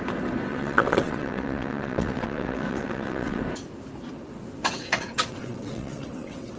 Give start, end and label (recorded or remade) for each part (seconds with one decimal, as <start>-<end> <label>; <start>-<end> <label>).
0.0-0.5 recorded; 0.5-3.4 remade; 3.4-4.6 recorded; 4.6-6.6 remade

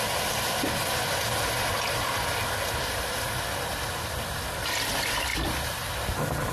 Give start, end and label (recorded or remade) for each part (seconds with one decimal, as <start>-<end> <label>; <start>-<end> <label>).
0.0-6.5 recorded

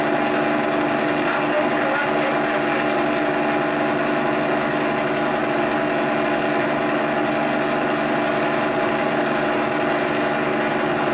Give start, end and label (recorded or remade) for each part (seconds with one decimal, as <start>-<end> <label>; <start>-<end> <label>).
0.0-11.1 recorded

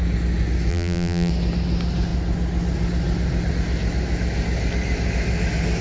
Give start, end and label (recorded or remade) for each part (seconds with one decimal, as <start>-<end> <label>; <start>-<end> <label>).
0.0-0.7 recorded; 0.7-1.3 remade; 1.3-5.8 recorded

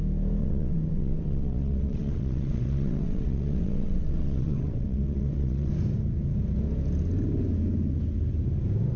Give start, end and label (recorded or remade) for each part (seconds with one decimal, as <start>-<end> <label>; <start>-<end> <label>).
0.0-0.4 recorded; 0.4-5.7 remade; 5.7-9.0 recorded

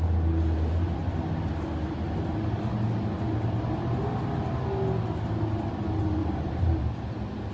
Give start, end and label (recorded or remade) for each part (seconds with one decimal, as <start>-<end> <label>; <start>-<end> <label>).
0.0-6.2 recorded; 6.2-6.8 remade; 6.8-7.5 recorded

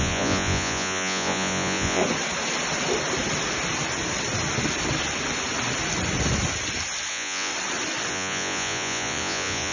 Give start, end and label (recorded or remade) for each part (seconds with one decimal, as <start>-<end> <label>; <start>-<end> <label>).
0.0-2.0 remade; 2.0-7.1 recorded; 7.1-7.5 remade; 7.5-8.1 recorded; 8.1-9.7 remade